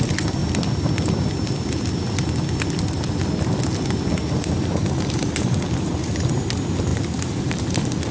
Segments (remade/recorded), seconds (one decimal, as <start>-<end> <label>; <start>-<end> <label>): 0.0-4.2 recorded; 4.2-6.3 remade; 6.3-6.9 recorded; 6.9-7.6 remade; 7.6-8.1 recorded